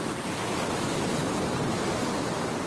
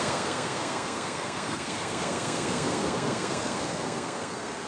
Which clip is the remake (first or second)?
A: second